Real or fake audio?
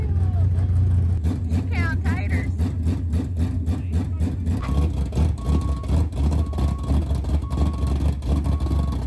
real